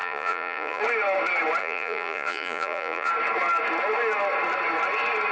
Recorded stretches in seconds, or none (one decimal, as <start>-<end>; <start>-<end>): 0.8-1.6; 3.1-5.3